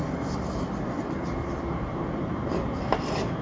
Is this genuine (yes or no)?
yes